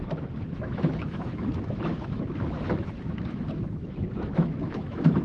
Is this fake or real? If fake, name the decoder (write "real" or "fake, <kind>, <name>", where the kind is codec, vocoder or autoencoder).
fake, autoencoder, DAC-VAE